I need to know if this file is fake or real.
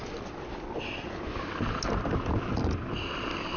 real